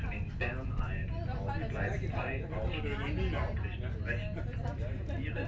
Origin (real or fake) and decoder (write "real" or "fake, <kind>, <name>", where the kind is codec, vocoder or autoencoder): real